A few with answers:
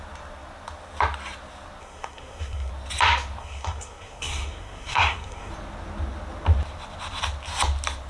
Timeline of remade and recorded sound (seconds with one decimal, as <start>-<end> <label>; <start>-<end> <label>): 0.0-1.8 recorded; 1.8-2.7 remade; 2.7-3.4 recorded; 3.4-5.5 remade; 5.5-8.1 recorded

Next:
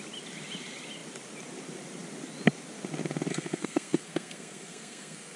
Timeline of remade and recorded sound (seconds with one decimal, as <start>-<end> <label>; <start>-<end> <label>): 0.0-3.3 recorded; 3.3-5.4 remade

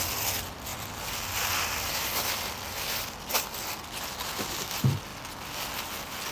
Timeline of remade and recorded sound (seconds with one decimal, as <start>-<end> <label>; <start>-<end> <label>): 0.0-6.3 recorded

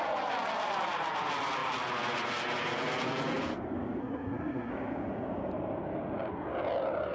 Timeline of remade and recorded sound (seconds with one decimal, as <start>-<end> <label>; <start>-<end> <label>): 0.0-4.0 recorded; 4.0-4.7 remade; 4.7-7.1 recorded